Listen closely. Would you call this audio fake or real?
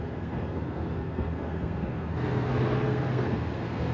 fake